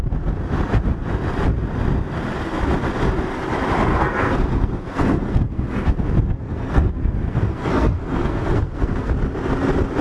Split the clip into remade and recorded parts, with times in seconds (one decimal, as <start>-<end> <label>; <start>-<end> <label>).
0.0-3.9 recorded; 3.9-9.1 remade; 9.1-10.0 recorded